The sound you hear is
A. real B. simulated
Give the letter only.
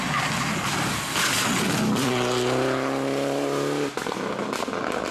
A